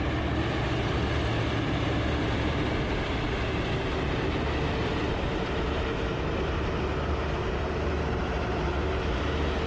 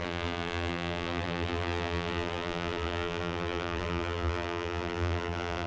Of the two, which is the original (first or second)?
first